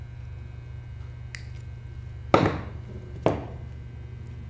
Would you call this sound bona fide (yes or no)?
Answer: yes